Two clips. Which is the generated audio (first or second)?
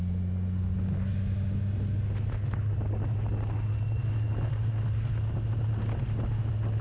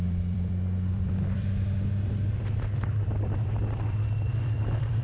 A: second